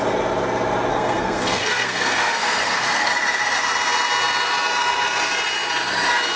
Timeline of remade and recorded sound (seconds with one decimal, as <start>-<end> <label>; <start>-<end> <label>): 0.0-0.9 recorded; 0.9-3.1 remade; 3.1-6.4 recorded